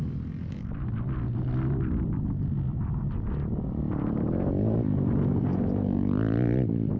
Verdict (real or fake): real